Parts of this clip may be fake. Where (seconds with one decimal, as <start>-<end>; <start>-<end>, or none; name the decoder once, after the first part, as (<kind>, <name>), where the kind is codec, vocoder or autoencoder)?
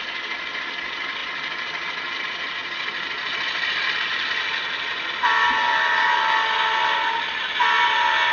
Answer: none